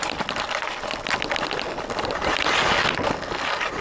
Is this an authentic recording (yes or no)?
yes